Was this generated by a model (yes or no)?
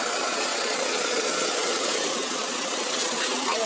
yes